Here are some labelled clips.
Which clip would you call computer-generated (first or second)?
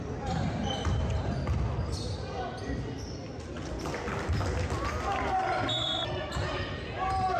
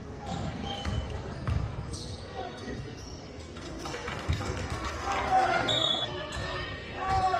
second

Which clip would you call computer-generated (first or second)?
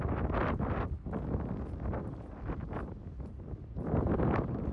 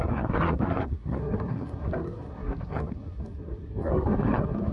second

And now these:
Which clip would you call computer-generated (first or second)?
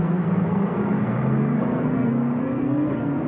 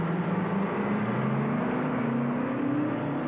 first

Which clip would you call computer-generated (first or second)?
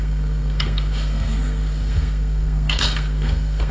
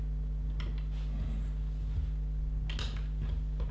first